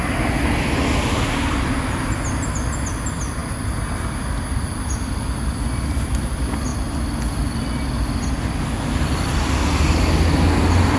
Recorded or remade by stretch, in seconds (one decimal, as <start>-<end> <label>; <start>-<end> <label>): 0.0-11.0 recorded